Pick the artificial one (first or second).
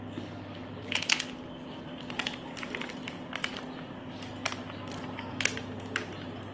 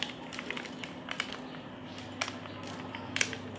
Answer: first